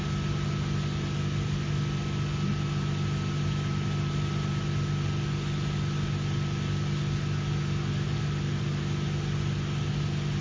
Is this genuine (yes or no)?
yes